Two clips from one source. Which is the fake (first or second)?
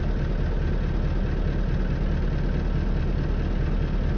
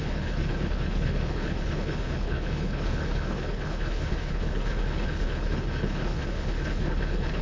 second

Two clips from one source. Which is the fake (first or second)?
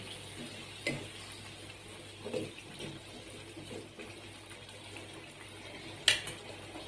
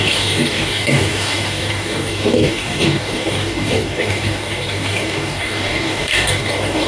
second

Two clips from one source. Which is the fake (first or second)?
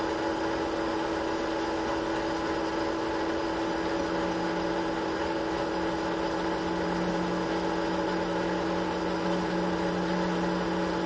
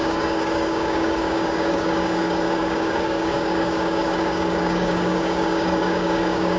second